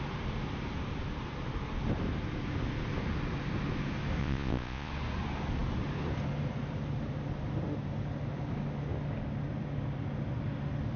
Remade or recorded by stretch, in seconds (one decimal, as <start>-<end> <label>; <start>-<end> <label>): 0.0-4.2 recorded; 4.2-4.9 remade; 4.9-11.0 recorded